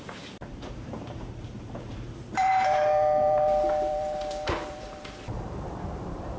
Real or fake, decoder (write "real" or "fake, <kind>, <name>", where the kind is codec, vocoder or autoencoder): fake, vocoder, BigVGAN v2